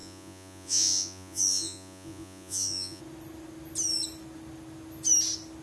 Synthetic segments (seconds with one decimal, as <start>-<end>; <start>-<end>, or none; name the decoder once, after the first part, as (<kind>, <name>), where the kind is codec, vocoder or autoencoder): 0.0-3.0 (vocoder, Vocos)